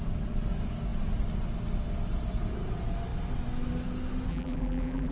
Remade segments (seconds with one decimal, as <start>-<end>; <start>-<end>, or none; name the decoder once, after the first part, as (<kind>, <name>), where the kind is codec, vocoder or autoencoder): 4.3-5.1 (vocoder, BigVGAN v2)

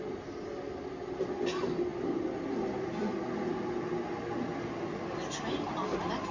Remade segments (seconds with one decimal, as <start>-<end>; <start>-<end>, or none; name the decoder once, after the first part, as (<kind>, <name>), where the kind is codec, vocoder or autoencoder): none

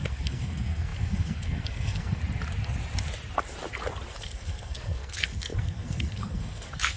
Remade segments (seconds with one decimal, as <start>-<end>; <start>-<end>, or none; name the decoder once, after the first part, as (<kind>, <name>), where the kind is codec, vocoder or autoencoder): 0.0-2.2 (codec, SNAC); 4.1-7.0

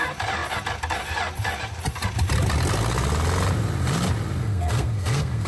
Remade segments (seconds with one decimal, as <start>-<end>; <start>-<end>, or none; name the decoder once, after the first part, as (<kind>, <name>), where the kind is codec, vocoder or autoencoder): 4.4-5.5 (codec, SNAC)

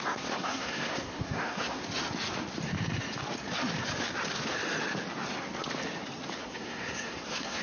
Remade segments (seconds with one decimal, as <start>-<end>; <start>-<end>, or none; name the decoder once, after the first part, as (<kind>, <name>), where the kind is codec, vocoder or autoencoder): 0.0-1.8 (codec, SNAC); 6.4-7.6